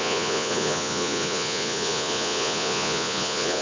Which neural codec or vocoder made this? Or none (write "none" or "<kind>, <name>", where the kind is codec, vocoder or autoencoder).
vocoder, Vocos